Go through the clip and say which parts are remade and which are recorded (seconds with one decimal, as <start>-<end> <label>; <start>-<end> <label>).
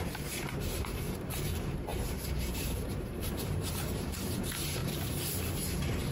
0.0-6.1 remade